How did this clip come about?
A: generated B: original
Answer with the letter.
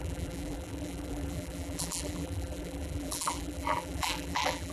A